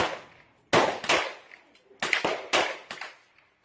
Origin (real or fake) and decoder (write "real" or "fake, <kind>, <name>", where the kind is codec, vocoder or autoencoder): real